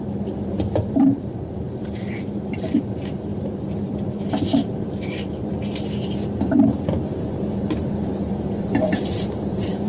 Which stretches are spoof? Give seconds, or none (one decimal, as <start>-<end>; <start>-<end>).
0.0-5.5; 7.0-9.9